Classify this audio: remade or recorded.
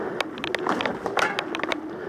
recorded